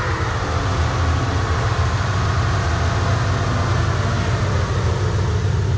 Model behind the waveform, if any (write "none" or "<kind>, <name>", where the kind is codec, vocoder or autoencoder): none